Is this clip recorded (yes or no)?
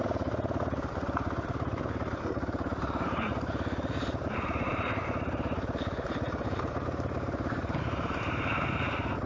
no